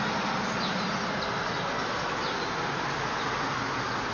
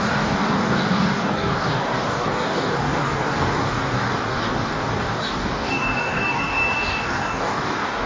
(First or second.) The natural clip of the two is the first